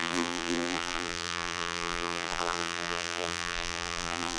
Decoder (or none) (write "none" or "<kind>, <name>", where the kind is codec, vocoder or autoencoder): vocoder, BigVGAN v2